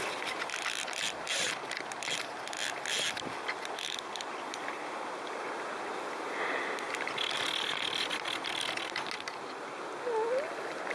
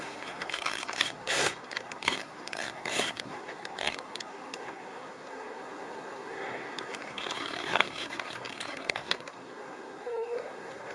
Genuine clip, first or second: first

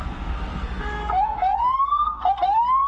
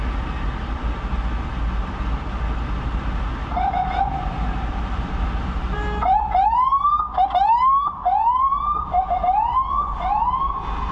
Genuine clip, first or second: second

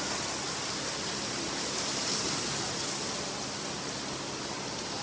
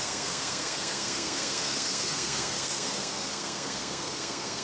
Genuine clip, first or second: first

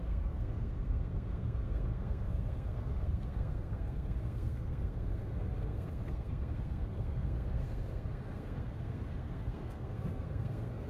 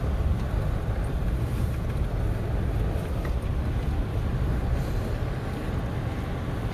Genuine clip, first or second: second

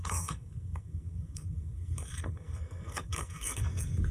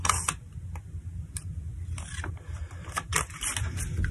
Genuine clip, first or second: second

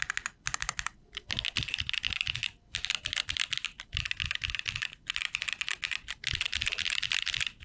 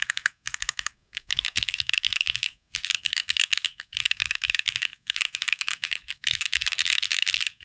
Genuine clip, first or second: first